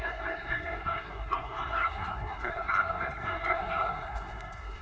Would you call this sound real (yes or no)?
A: no